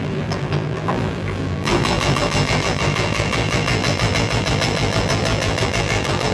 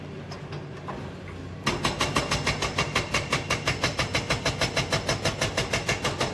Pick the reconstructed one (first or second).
first